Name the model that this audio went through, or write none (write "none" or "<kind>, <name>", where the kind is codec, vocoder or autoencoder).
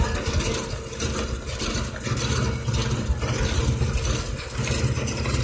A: none